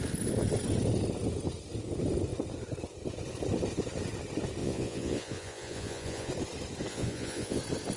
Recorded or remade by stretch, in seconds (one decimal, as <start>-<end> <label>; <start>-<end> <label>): 0.0-4.6 recorded; 4.6-6.3 remade; 6.3-6.9 recorded; 6.9-7.6 remade; 7.6-8.0 recorded